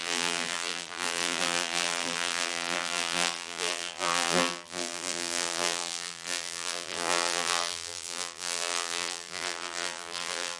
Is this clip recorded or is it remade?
remade